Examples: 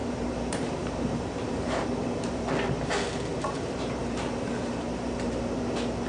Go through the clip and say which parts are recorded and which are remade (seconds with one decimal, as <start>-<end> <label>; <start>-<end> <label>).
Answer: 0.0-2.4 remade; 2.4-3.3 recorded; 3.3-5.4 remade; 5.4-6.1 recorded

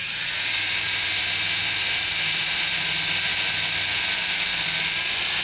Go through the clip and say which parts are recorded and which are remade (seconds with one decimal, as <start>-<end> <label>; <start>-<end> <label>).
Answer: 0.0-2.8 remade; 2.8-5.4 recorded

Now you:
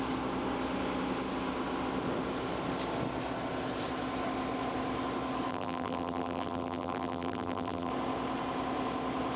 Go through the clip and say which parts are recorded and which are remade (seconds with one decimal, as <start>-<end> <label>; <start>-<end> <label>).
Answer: 0.0-5.5 recorded; 5.5-7.9 remade; 7.9-9.4 recorded

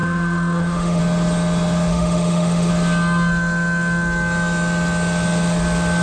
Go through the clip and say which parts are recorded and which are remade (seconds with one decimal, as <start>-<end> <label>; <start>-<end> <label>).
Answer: 0.0-1.0 remade; 1.0-1.9 recorded; 1.9-2.7 remade; 2.7-6.0 recorded